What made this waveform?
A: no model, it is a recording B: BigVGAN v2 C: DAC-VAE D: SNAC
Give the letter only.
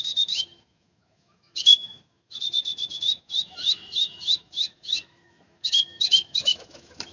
C